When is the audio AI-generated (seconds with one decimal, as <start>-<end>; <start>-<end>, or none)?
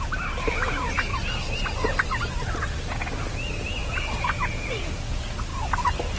none